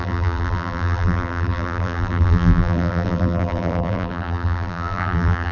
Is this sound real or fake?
fake